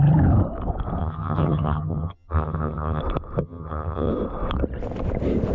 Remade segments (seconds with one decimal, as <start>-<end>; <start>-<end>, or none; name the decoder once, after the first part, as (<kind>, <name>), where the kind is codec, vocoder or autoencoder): 1.0-3.0 (vocoder, HiFi-GAN); 3.4-4.1